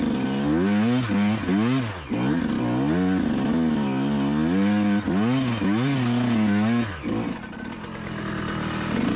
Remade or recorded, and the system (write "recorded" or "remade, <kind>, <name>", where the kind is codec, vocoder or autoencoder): recorded